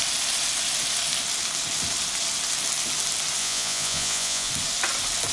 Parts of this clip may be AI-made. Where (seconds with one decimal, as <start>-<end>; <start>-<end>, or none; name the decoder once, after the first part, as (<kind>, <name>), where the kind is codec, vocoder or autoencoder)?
3.4-4.5 (vocoder, Vocos)